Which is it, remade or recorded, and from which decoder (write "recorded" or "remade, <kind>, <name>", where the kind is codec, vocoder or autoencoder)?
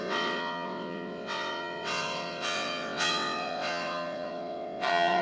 remade, vocoder, WaveNeXt